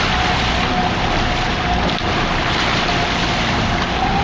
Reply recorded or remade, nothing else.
recorded